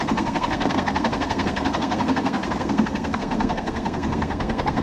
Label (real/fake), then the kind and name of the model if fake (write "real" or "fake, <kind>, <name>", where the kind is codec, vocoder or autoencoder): fake, codec, SNAC